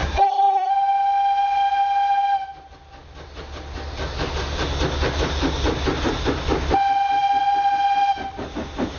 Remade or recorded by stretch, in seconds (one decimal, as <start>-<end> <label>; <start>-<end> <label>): 0.0-0.7 remade; 0.7-9.0 recorded